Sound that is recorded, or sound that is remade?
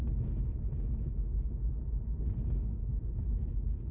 recorded